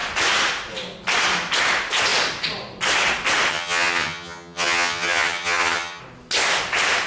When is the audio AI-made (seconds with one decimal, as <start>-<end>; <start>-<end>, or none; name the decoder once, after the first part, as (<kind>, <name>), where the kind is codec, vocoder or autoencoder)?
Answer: 3.5-6.0 (vocoder, HiFi-GAN)